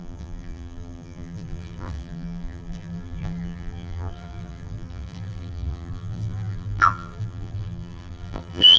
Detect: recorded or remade remade